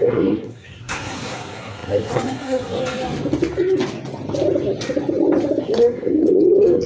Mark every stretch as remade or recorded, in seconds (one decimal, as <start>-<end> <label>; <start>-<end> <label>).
0.0-2.8 remade; 2.8-5.6 recorded; 5.6-6.9 remade